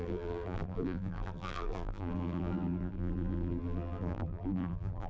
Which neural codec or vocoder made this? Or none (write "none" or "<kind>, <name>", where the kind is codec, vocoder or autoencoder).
vocoder, BigVGAN v2